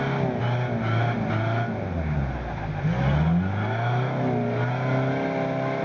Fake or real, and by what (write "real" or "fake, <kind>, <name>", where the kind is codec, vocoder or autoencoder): real